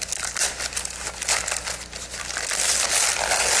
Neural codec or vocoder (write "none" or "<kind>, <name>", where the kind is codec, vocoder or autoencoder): none